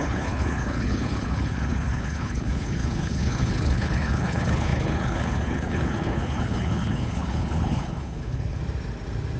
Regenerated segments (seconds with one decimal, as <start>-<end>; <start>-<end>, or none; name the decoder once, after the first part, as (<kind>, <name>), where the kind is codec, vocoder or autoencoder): 0.0-8.6 (codec, HILCodec)